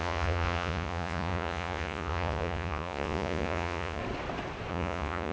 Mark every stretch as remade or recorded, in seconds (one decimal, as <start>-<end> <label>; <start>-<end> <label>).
0.0-4.0 remade; 4.0-4.7 recorded; 4.7-5.3 remade